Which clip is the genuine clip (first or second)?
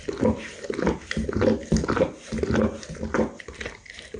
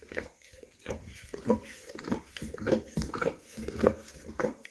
first